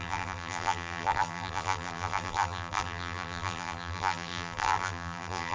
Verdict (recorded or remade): remade